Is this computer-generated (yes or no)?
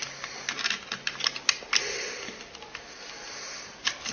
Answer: no